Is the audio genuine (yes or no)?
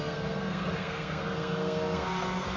no